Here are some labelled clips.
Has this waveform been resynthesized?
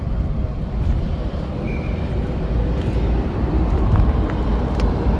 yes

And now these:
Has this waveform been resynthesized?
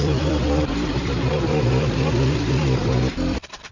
yes